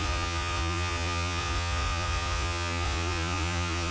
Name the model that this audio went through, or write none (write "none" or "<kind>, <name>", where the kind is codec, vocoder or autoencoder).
vocoder, Vocos